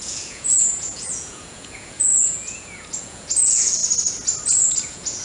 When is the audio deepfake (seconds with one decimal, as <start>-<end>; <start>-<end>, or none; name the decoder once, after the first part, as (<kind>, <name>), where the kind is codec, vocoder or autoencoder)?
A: 0.0-3.8 (vocoder, Vocos); 4.8-5.2